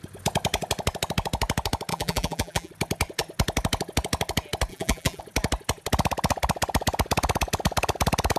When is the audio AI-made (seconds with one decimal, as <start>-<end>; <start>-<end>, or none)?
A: 1.9-2.7; 4.7-5.2